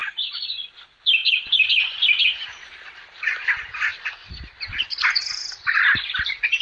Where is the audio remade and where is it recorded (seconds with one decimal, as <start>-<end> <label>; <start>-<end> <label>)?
0.0-6.6 recorded